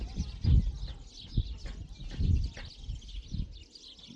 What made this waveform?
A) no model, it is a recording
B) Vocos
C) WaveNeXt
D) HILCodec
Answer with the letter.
A